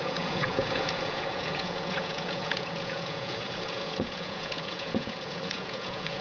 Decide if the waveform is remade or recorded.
remade